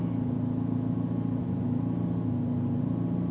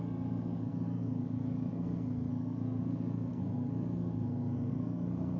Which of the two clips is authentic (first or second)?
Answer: first